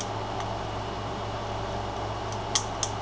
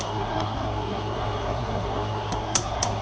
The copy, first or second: second